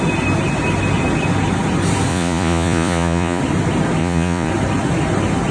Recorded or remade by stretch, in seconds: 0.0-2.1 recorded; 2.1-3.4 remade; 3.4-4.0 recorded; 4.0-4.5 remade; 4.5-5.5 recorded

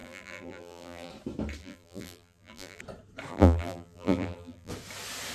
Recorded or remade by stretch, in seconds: 0.0-1.1 remade; 1.1-1.6 recorded; 1.6-2.8 remade; 2.8-3.3 recorded; 3.3-4.7 remade; 4.7-5.3 recorded

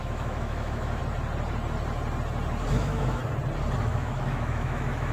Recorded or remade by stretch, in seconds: 0.0-1.0 remade; 1.0-2.7 recorded; 2.7-3.2 remade; 3.2-3.8 recorded; 3.8-5.1 remade

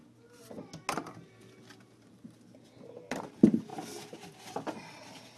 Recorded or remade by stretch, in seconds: 0.0-5.4 recorded

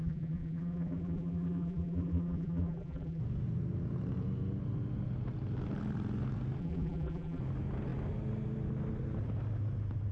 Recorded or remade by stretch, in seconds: 0.0-3.2 remade; 3.2-6.6 recorded; 6.6-7.4 remade; 7.4-10.1 recorded

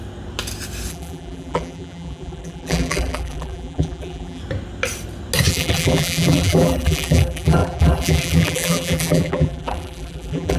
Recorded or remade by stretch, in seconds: 0.0-0.9 recorded; 0.9-4.4 remade; 4.4-5.5 recorded; 5.5-10.6 remade

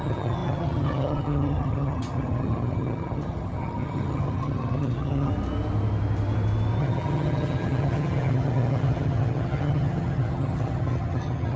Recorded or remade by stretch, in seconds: 0.0-5.3 remade; 5.3-6.8 recorded; 6.8-11.6 remade

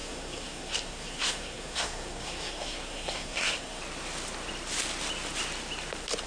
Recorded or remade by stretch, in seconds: 0.0-3.8 remade; 3.8-6.3 recorded